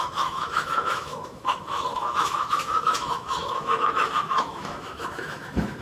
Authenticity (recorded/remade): remade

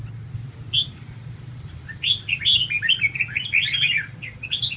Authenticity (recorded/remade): recorded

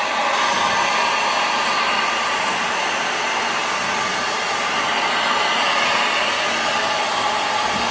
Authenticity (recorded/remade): recorded